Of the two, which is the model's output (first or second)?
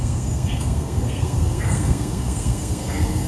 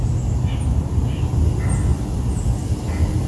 first